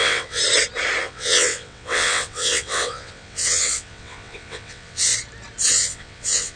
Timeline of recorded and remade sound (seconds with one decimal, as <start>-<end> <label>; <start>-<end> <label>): 0.0-0.4 remade; 0.4-1.0 recorded; 1.0-5.1 remade; 5.1-5.7 recorded; 5.7-6.6 remade